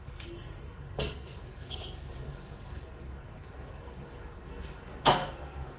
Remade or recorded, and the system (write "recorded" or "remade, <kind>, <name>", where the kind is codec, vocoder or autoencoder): remade, codec, SNAC